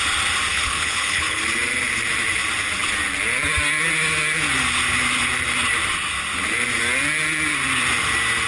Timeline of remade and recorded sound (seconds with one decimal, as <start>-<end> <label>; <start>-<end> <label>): 0.0-0.5 recorded; 0.5-1.4 remade; 1.4-8.5 recorded